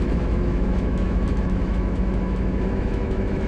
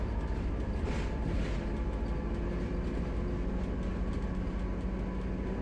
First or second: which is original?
second